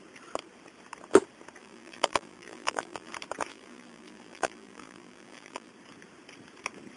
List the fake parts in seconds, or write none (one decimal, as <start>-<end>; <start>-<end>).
1.6-3.1; 3.5-5.7